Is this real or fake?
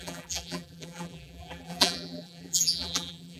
fake